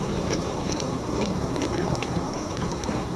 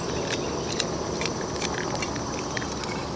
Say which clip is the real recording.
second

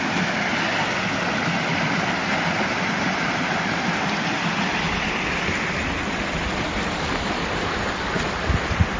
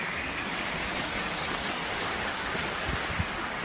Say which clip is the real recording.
first